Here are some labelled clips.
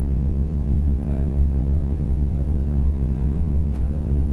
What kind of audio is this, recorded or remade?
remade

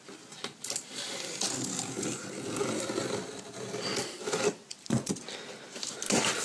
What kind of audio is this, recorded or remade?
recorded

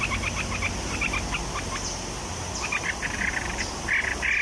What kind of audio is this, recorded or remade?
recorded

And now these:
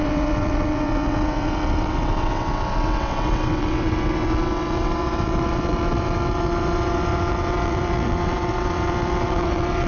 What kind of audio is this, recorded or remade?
remade